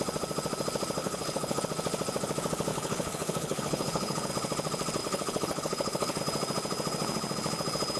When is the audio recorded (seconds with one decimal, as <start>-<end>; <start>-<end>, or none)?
0.0-1.0; 1.6-2.7; 4.3-5.0; 6.2-8.0